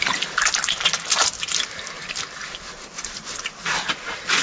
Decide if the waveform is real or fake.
real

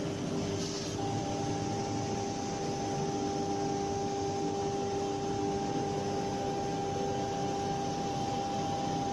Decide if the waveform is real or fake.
real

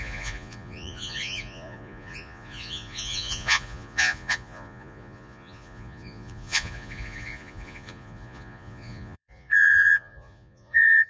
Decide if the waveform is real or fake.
fake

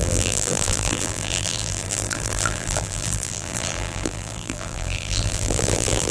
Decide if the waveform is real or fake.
fake